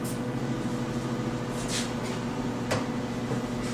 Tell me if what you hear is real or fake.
real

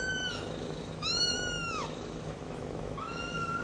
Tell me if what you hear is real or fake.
fake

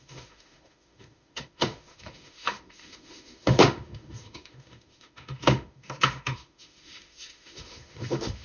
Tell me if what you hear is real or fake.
fake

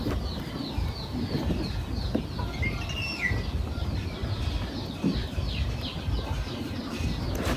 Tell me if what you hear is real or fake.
real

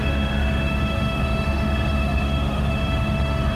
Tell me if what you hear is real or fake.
fake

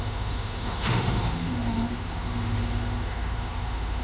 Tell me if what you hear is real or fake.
fake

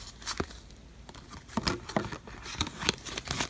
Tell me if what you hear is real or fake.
real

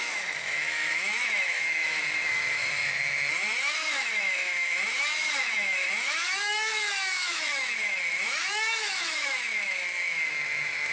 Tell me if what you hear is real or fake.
fake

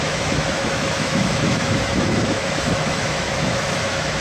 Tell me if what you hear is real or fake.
fake